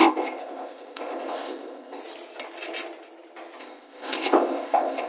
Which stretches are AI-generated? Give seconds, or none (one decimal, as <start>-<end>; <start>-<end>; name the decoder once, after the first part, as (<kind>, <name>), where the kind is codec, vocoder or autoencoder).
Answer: 0.0-2.0 (codec, ZipCodec); 3.6-5.1